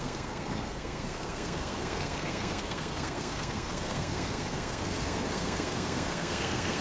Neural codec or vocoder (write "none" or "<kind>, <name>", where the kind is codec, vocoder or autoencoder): codec, SNAC